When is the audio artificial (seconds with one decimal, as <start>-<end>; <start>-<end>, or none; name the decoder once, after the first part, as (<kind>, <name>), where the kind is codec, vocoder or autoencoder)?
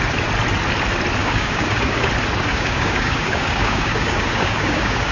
1.2-2.1 (codec, DAC); 2.5-5.1